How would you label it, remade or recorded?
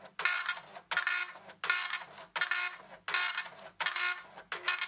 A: recorded